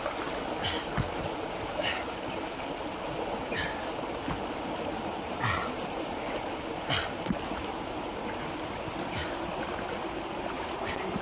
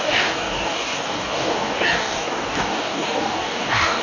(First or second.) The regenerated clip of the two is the second